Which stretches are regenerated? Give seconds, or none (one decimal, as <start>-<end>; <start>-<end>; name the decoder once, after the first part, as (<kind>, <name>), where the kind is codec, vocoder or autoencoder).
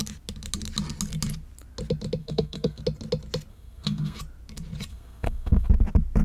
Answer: 2.2-2.8 (codec, SNAC); 3.5-4.2; 4.9-5.7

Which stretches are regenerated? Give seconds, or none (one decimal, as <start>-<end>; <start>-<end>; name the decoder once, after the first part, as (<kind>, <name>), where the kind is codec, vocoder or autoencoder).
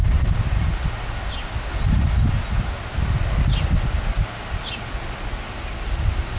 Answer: none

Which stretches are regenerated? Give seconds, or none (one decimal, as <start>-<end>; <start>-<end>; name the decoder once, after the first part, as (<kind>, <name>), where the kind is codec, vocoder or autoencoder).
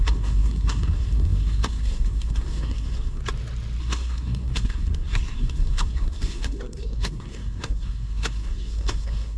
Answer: 0.0-3.2 (codec, SNAC); 3.8-9.4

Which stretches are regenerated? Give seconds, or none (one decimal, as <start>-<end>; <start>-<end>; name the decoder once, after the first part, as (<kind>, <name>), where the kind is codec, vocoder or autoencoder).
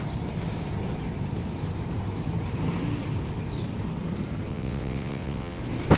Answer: 4.5-5.6 (vocoder, WaveNeXt)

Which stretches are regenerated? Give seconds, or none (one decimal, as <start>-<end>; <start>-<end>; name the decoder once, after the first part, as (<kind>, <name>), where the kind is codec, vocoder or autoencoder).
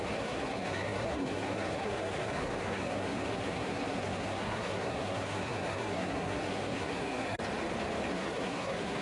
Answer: 0.0-7.4 (codec, SNAC); 8.1-9.0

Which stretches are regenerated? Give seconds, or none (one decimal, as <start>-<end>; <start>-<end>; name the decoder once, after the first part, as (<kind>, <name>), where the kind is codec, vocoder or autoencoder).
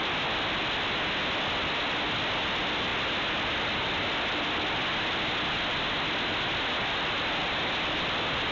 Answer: none